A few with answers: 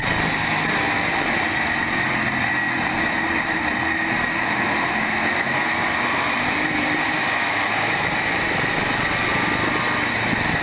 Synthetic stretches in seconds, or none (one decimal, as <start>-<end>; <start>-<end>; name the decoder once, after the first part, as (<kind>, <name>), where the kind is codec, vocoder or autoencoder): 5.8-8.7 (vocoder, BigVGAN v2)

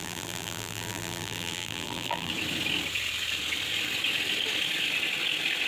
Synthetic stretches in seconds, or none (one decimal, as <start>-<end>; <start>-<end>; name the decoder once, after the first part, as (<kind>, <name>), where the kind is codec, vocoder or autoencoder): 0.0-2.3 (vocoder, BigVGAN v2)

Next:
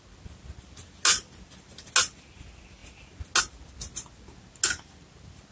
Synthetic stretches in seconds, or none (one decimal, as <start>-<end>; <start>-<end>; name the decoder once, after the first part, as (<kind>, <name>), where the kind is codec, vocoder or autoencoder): none

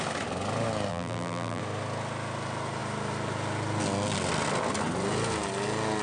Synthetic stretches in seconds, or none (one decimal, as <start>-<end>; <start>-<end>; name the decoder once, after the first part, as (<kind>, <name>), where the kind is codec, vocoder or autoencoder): 0.9-1.6 (vocoder, BigVGAN v2)

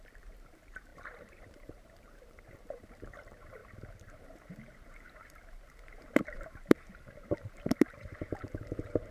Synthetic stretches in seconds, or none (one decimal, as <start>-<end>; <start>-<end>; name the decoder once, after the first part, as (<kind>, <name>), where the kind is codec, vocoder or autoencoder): 0.0-9.1 (vocoder, BigVGAN v2)

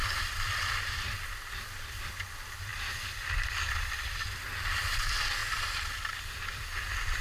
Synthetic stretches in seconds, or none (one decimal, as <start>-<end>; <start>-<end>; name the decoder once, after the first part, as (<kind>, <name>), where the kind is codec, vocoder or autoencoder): 0.0-2.0 (vocoder, BigVGAN v2); 2.7-4.4; 5.4-6.8

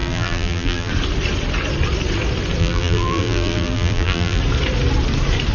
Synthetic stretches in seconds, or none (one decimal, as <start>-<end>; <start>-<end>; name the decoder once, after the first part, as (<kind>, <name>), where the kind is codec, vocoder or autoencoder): 0.0-0.9 (vocoder, BigVGAN v2); 2.6-4.4

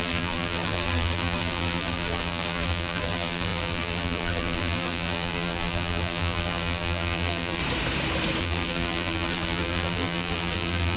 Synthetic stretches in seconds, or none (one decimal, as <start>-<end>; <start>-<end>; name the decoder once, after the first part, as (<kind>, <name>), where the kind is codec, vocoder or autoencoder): 0.0-7.6 (vocoder, BigVGAN v2); 8.4-11.0